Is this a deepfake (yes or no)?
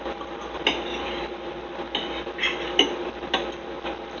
no